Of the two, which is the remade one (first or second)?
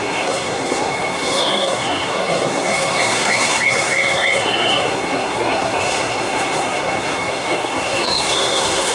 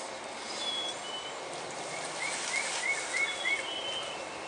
first